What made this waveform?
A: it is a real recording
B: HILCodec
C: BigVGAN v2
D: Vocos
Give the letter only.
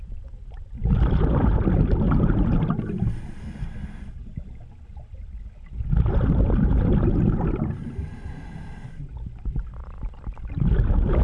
A